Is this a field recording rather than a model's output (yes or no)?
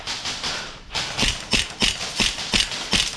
yes